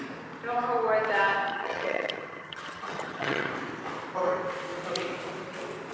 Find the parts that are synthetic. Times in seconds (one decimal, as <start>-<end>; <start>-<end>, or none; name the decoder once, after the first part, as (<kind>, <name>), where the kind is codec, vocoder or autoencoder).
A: 1.5-3.5 (vocoder, HiFi-GAN)